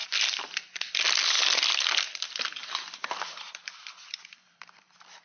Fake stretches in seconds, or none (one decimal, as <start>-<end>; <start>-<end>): 0.9-5.2